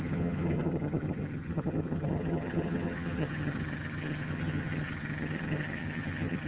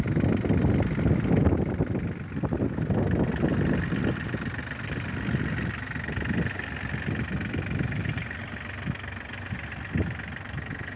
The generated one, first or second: first